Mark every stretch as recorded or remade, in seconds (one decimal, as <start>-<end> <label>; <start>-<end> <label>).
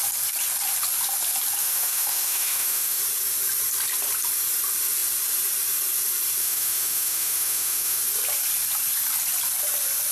0.0-1.6 recorded; 1.6-3.0 remade; 3.0-6.4 recorded; 6.4-8.0 remade; 8.0-10.1 recorded